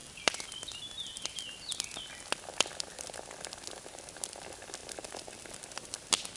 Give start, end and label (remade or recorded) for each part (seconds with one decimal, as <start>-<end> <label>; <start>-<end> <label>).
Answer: 0.0-0.8 remade; 0.8-4.8 recorded; 4.8-6.4 remade